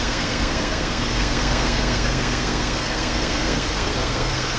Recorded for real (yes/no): no